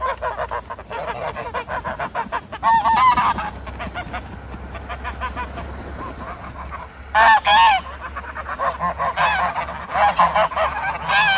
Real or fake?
real